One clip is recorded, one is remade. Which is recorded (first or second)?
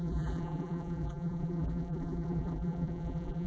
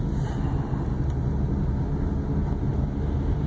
second